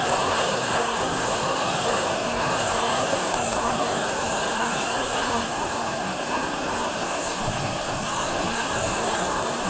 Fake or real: fake